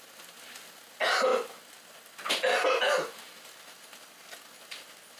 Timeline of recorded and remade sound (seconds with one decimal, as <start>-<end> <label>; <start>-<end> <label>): 0.0-5.2 recorded